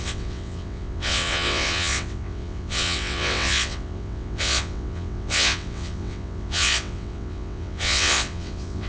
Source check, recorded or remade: remade